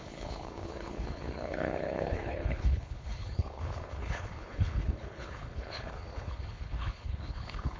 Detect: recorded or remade remade